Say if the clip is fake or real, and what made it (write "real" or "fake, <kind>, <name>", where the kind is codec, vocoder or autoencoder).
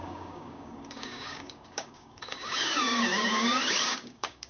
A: fake, codec, DAC